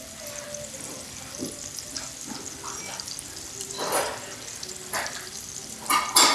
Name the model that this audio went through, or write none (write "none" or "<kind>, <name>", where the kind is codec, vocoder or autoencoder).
none